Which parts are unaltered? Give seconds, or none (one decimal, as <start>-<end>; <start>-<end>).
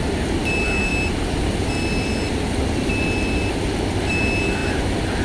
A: 0.0-5.2